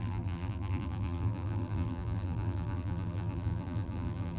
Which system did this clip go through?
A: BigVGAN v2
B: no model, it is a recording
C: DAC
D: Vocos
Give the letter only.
A